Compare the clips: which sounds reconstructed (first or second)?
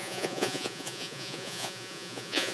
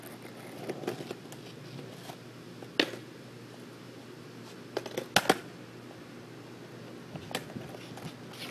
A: first